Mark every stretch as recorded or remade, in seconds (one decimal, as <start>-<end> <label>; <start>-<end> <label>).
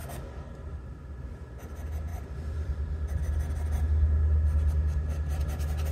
0.0-2.1 recorded; 2.1-3.2 remade; 3.2-5.9 recorded